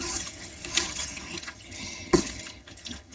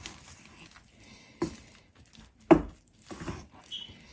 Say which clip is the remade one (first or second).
first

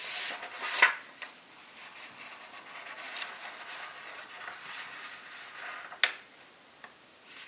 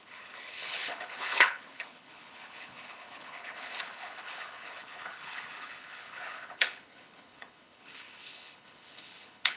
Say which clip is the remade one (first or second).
second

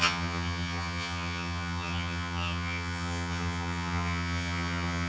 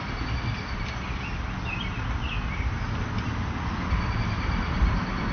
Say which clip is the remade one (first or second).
first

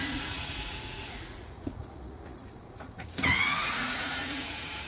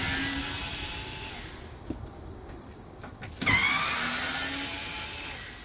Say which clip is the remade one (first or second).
first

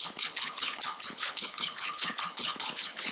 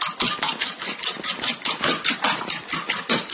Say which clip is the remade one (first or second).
first